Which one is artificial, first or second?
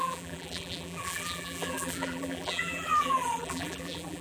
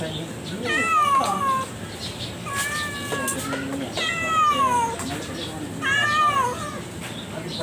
first